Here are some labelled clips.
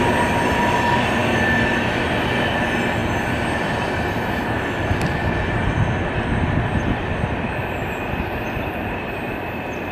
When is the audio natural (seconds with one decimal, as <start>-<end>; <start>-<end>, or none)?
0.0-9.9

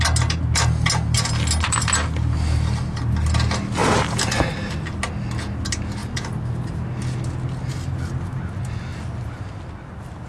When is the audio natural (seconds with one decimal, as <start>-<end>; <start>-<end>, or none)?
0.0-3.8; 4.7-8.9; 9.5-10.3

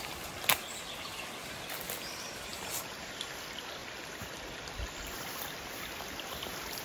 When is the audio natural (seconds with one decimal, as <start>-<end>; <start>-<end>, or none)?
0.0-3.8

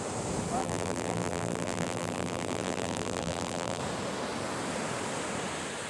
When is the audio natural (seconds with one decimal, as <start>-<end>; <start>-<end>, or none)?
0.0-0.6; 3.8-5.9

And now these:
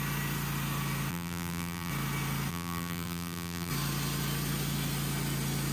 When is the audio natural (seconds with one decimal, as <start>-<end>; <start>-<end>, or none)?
0.0-1.1; 1.9-2.5; 3.7-5.7

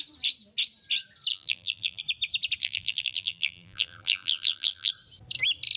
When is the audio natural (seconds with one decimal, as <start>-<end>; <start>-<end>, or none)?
0.0-1.3; 2.0-2.6; 4.9-5.8